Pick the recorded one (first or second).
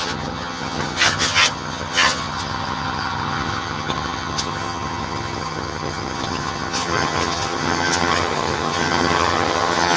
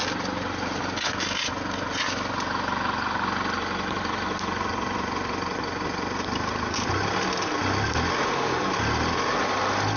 second